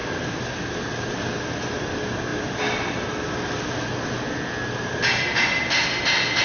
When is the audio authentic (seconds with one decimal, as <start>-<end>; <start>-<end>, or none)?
0.0-6.4